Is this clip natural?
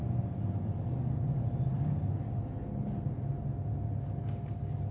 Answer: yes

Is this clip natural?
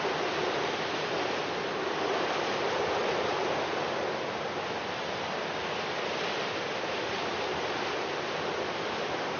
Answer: yes